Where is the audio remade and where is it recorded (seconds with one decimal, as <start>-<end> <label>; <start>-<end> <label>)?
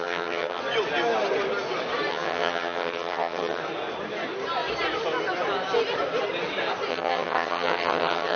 0.0-0.6 remade; 0.6-2.1 recorded; 2.1-3.6 remade; 3.6-6.9 recorded; 6.9-8.4 remade